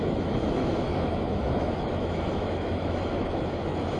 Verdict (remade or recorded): remade